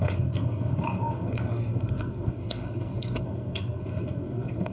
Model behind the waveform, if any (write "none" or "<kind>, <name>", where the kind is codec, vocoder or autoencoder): codec, SNAC